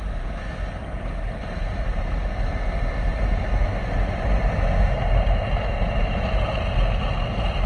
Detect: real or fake real